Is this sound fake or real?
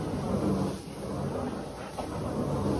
real